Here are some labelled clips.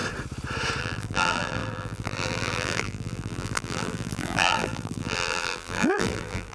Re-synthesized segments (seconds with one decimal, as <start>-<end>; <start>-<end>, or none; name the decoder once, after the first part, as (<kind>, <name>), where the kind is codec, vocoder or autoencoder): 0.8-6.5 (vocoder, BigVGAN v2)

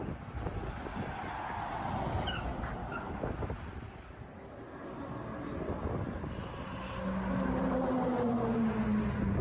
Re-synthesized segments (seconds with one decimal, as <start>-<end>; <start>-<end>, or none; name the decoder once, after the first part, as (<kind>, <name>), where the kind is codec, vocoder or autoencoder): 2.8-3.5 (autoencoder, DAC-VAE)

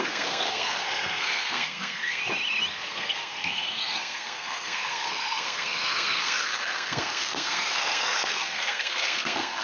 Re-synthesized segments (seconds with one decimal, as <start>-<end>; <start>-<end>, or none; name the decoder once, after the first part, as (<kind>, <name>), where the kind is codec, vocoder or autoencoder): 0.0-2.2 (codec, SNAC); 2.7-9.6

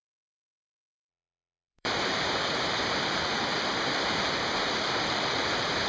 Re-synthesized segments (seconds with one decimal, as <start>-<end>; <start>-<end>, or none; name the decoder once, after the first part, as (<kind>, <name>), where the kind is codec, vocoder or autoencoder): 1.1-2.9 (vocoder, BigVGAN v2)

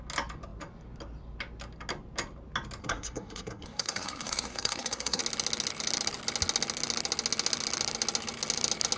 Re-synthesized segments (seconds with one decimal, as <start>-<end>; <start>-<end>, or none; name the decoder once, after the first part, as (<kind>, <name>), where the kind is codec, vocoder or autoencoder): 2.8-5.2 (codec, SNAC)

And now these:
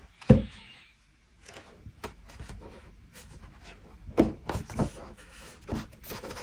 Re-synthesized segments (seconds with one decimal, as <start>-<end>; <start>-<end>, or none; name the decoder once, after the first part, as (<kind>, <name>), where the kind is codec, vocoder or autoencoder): 0.0-5.5 (autoencoder, DAC-VAE); 6.0-6.4

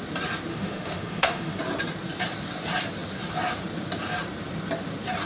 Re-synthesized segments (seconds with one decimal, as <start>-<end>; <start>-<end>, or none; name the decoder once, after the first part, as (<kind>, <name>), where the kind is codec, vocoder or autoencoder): 0.5-1.6 (autoencoder, DAC-VAE)

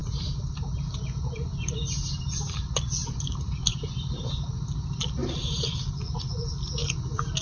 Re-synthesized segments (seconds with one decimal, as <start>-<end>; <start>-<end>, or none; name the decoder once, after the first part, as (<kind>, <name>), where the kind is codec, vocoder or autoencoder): 0.0-1.5 (vocoder, BigVGAN v2); 3.0-4.2; 5.2-5.8